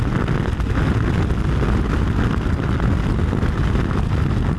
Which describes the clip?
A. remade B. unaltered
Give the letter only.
B